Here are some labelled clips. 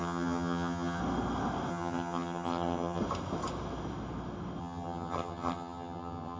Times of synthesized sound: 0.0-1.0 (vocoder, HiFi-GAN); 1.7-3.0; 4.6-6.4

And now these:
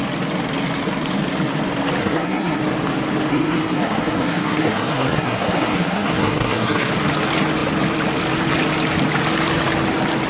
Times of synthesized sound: 2.0-2.6 (codec, SNAC); 3.3-6.9

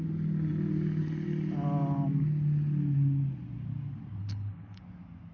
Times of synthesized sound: 4.2-4.8 (codec, HILCodec)